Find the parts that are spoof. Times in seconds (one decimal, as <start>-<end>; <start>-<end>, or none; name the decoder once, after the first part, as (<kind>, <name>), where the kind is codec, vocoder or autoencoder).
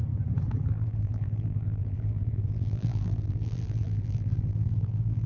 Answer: 0.7-5.3 (vocoder, BigVGAN v2)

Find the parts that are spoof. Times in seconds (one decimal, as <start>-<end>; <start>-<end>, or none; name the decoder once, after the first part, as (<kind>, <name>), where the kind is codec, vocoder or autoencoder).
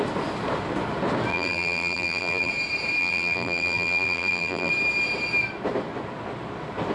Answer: 1.3-2.5 (vocoder, BigVGAN v2); 3.0-4.7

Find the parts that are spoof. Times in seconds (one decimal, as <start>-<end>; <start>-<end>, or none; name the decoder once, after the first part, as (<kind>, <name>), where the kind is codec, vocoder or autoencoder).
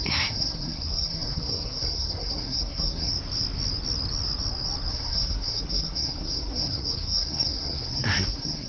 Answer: 0.0-3.1 (codec, SNAC); 4.9-8.7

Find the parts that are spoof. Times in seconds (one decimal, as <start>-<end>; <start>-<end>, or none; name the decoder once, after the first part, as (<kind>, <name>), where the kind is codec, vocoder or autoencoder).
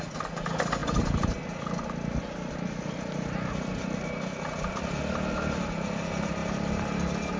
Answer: none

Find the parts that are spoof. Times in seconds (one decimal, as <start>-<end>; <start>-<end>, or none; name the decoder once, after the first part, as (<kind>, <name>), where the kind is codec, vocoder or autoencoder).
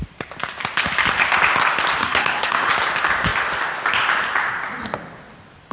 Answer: 2.0-2.7 (codec, SNAC)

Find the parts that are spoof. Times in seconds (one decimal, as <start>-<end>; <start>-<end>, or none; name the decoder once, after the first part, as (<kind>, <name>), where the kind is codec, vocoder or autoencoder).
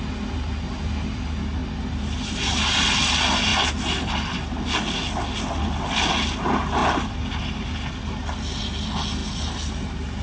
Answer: none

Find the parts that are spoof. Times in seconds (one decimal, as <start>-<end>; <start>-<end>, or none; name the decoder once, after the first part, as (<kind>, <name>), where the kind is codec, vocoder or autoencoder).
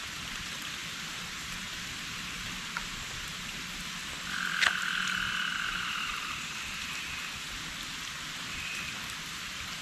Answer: none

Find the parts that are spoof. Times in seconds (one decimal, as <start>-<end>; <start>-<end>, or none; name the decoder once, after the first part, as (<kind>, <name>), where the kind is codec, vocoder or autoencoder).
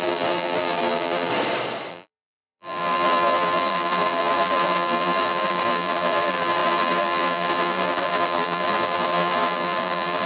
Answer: 0.0-1.3 (vocoder, BigVGAN v2); 1.9-10.3